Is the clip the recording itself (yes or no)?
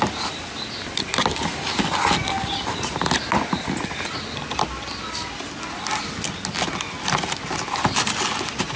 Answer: yes